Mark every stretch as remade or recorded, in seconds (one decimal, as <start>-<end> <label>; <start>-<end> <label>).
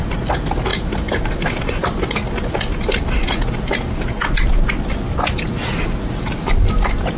0.0-0.7 recorded; 0.7-1.2 remade; 1.2-7.2 recorded